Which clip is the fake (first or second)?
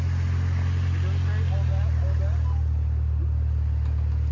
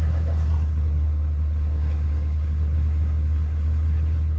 second